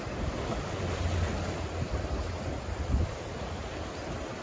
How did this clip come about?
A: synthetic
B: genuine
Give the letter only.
B